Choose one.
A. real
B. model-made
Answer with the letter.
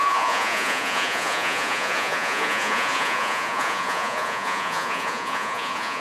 B